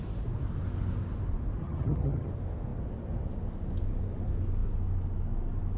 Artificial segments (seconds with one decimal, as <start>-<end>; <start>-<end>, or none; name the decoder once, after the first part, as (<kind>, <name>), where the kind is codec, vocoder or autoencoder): 1.6-2.3 (vocoder, HiFi-GAN)